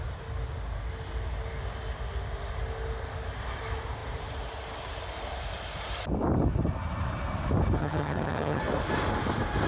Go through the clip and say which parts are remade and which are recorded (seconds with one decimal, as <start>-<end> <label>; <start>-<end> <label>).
0.0-7.8 recorded; 7.8-8.6 remade; 8.6-9.7 recorded